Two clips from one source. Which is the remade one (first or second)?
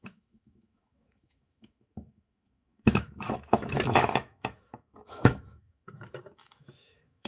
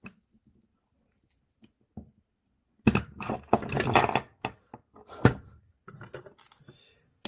first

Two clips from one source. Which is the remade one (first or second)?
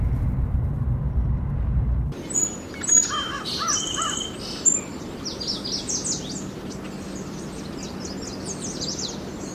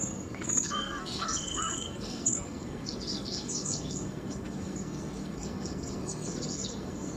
second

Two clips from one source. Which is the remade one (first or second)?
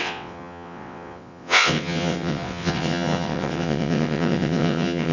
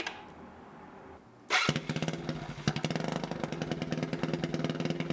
first